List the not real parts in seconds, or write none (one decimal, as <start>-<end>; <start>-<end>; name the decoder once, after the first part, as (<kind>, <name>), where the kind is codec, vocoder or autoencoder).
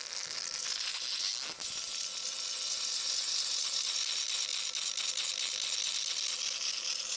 none